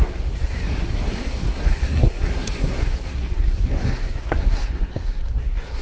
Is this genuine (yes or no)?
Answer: no